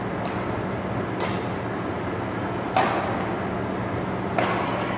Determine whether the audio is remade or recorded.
recorded